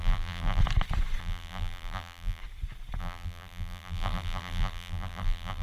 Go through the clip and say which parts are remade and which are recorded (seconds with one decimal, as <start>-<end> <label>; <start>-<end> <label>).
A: 0.0-0.6 remade; 0.6-1.2 recorded; 1.2-2.4 remade; 2.4-3.0 recorded; 3.0-5.6 remade